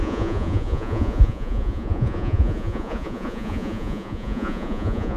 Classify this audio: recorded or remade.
remade